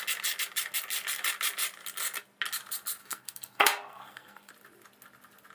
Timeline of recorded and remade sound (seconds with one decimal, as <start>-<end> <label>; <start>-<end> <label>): 0.0-3.0 recorded; 3.0-4.5 remade; 4.5-5.5 recorded